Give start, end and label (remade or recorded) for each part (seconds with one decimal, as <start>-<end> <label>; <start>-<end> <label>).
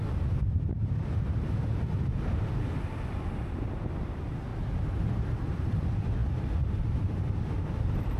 0.0-4.5 recorded; 4.5-5.8 remade; 5.8-6.2 recorded; 6.2-8.2 remade